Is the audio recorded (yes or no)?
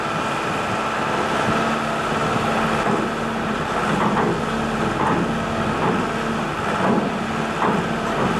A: yes